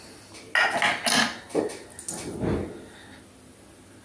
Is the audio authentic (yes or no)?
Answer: yes